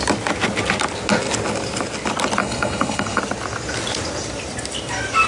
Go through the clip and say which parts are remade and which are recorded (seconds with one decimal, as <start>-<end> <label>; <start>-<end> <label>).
0.0-2.4 recorded; 2.4-3.2 remade; 3.2-5.3 recorded